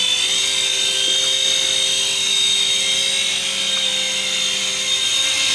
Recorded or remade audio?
recorded